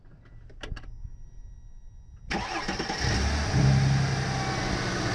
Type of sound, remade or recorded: recorded